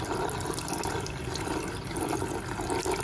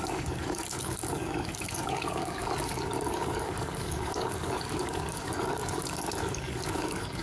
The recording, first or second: first